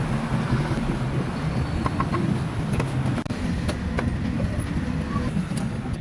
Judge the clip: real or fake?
real